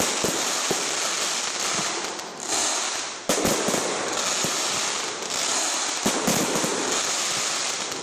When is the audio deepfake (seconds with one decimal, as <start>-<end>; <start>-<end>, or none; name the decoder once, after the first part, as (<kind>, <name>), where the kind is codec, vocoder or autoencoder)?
none

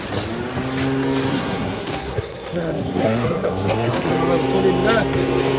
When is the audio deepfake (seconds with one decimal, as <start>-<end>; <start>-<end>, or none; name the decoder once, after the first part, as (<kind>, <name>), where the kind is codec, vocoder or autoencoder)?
1.3-4.1 (codec, SNAC)

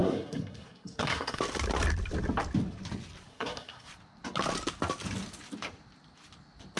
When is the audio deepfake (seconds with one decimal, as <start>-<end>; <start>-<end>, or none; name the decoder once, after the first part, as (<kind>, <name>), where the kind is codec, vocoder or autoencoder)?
0.0-1.4 (codec, SNAC); 3.3-3.9